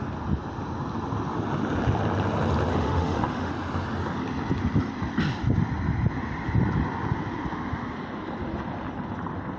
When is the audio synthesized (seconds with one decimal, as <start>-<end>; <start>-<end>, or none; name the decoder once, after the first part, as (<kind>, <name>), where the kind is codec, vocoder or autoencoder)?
2.7-3.5 (autoencoder, DAC-VAE)